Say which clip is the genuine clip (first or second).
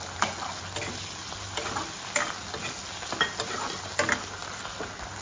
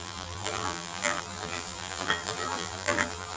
first